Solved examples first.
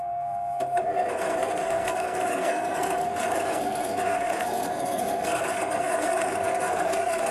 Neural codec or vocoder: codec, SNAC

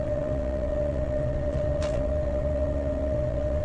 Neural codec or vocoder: vocoder, WaveNeXt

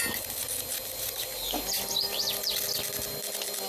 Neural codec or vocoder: none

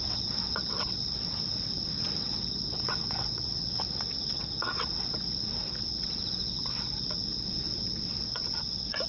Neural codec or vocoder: vocoder, WaveNeXt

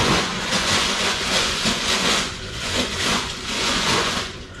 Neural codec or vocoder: vocoder, Vocos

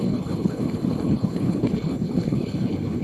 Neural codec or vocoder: codec, HILCodec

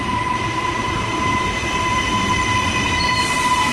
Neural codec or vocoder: vocoder, BigVGAN v2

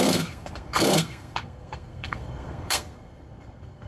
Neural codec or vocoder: codec, SNAC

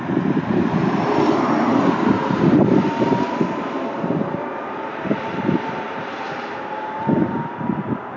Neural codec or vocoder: vocoder, BigVGAN v2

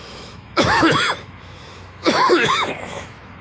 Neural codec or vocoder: autoencoder, DAC-VAE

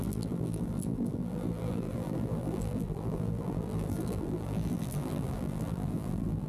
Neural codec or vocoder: vocoder, BigVGAN v2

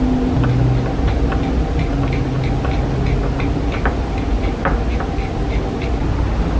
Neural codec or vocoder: none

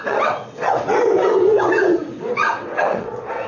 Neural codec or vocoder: vocoder, WaveNeXt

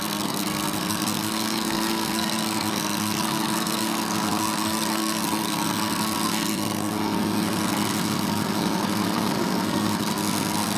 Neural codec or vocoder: codec, SNAC